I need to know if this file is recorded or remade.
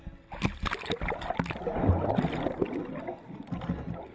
recorded